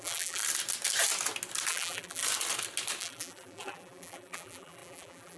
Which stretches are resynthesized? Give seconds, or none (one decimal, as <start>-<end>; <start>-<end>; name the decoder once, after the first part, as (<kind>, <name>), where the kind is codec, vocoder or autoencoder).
0.0-0.4 (vocoder, BigVGAN v2); 1.7-2.2; 3.0-5.4